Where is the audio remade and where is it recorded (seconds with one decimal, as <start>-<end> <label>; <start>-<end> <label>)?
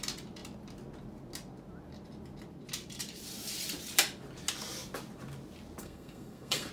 0.0-5.8 recorded; 5.8-6.7 remade